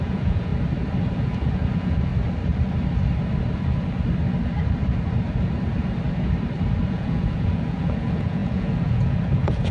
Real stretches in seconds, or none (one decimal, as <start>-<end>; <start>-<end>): 0.5-1.0; 2.1-6.9